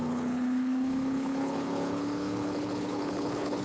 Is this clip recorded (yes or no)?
no